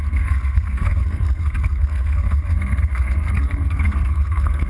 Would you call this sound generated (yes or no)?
yes